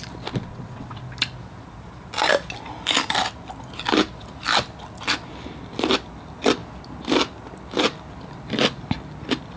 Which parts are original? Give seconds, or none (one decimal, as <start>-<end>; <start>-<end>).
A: 0.0-0.5; 1.0-9.6